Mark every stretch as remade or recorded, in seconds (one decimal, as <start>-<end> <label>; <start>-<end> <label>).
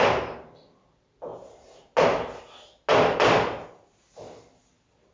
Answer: 0.0-2.9 recorded; 2.9-3.8 remade; 3.8-5.1 recorded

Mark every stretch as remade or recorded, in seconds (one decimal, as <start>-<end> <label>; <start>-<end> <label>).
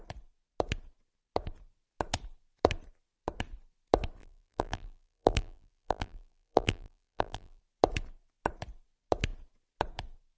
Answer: 0.0-4.2 recorded; 4.2-7.6 remade; 7.6-10.4 recorded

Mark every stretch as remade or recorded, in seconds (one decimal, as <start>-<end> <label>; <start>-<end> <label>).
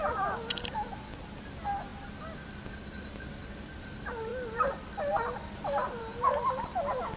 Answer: 0.0-7.2 recorded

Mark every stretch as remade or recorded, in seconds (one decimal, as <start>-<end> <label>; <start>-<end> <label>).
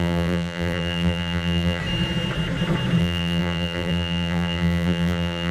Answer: 0.0-1.8 remade; 1.8-3.0 recorded; 3.0-5.5 remade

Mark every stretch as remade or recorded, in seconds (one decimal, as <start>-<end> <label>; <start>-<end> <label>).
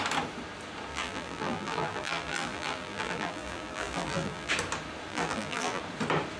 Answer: 0.0-0.9 recorded; 0.9-4.5 remade; 4.5-5.1 recorded; 5.1-5.8 remade; 5.8-6.4 recorded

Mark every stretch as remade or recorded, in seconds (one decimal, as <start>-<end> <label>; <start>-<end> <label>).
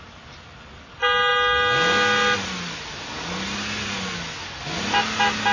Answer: 0.0-5.5 recorded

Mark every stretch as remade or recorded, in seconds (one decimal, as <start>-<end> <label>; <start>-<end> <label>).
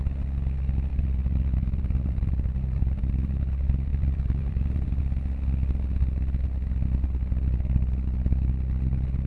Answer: 0.0-0.9 recorded; 0.9-3.4 remade; 3.4-3.9 recorded; 3.9-5.0 remade; 5.0-9.3 recorded